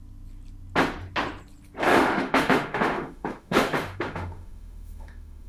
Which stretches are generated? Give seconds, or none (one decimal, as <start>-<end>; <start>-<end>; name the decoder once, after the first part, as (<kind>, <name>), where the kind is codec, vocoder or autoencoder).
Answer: 1.9-5.5 (autoencoder, DAC-VAE)